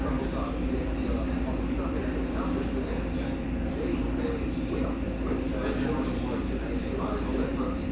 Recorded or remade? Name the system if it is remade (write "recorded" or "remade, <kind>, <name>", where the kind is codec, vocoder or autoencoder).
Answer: recorded